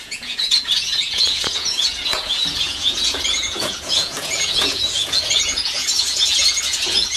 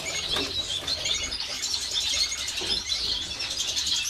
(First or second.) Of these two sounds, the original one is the second